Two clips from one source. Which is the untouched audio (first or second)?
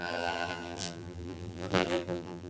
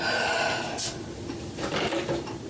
second